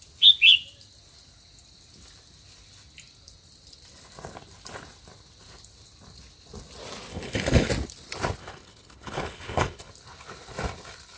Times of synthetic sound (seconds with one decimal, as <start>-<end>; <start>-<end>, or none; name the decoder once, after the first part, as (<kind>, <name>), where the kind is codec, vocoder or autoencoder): 7.1-7.7 (codec, HILCodec); 8.4-9.9